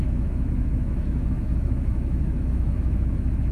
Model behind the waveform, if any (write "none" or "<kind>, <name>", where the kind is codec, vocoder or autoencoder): autoencoder, DAC-VAE